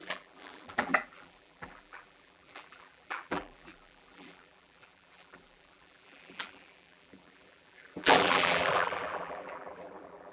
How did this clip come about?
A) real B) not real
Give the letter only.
B